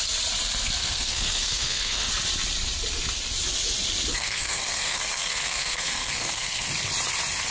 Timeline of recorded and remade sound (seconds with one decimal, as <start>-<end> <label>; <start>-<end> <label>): 0.0-0.8 recorded; 0.8-2.1 remade; 2.1-4.1 recorded; 4.1-6.7 remade; 6.7-7.5 recorded